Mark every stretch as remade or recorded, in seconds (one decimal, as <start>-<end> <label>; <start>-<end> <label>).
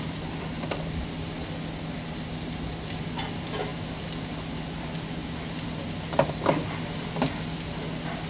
0.0-8.3 recorded